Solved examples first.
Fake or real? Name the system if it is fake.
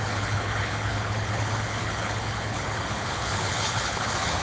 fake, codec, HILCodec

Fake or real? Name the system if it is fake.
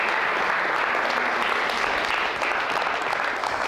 real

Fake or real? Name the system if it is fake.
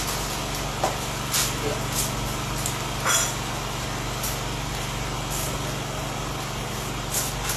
real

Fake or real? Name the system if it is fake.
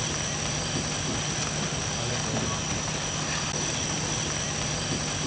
real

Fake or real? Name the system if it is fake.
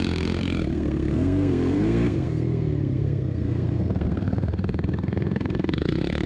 fake, codec, SNAC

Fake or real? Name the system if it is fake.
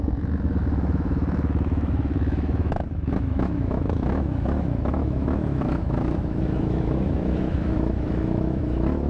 fake, autoencoder, DAC-VAE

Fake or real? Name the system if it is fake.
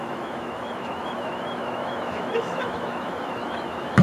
fake, autoencoder, DAC-VAE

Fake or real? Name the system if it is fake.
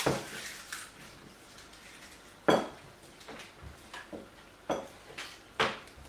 real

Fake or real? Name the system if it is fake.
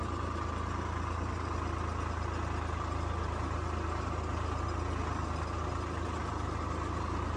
real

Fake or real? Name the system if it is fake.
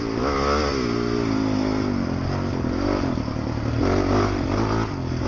real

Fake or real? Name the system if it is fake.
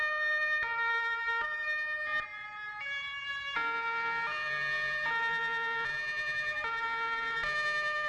real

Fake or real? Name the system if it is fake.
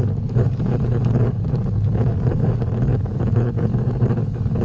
fake, codec, DAC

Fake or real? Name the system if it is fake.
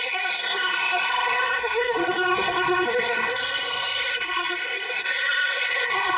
fake, codec, SNAC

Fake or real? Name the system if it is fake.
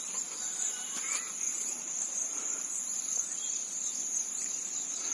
fake, vocoder, BigVGAN v2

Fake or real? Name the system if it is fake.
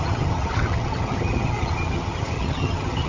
fake, vocoder, HiFi-GAN